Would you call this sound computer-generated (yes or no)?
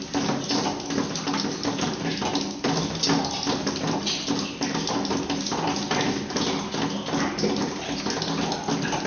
no